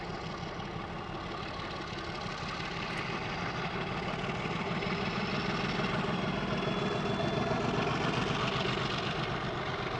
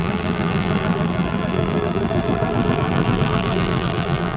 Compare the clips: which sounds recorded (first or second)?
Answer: first